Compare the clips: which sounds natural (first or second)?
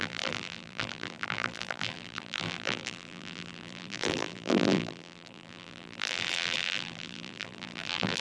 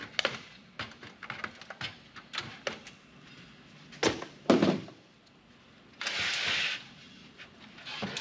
second